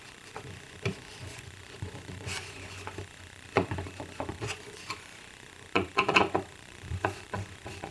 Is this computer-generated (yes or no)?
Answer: yes